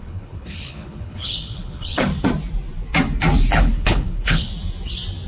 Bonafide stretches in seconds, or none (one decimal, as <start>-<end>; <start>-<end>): 2.1-3.5; 4.5-5.3